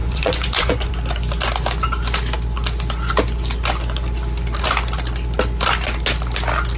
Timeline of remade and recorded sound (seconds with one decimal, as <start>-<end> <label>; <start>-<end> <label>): 0.0-0.9 remade; 0.9-6.8 recorded